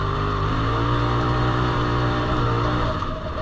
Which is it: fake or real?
fake